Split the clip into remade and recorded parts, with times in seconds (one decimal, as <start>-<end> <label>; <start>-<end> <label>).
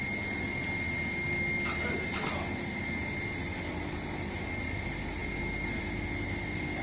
0.0-6.8 recorded